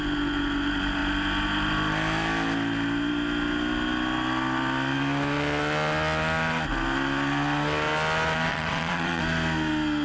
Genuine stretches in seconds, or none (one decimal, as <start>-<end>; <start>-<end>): 0.0-8.5; 9.2-10.0